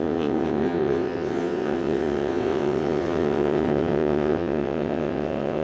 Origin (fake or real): fake